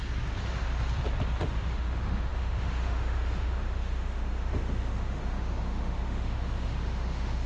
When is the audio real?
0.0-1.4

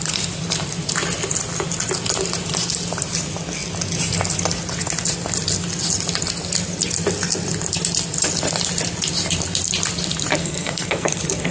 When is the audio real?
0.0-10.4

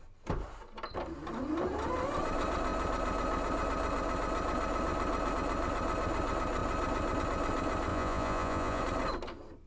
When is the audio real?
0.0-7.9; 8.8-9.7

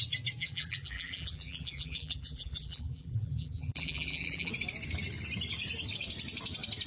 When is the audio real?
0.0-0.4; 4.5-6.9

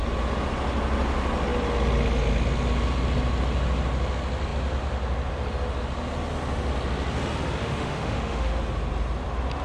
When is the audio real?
0.0-7.6; 8.6-9.6

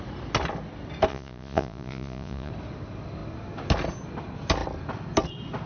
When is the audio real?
0.0-1.1; 2.5-5.7

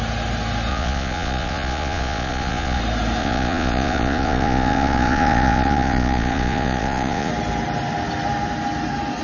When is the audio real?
0.0-0.7; 2.8-3.2; 7.3-9.2